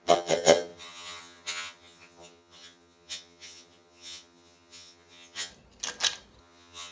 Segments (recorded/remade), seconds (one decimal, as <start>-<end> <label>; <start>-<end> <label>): 0.0-5.5 remade; 5.5-6.4 recorded; 6.4-6.9 remade